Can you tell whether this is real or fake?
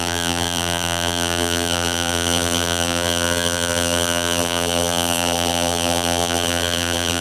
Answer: fake